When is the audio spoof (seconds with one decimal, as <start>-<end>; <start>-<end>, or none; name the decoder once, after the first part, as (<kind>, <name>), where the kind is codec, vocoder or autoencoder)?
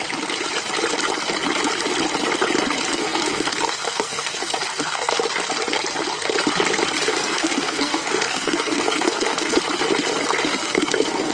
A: 2.9-5.1 (codec, SNAC); 7.1-9.6; 10.5-11.3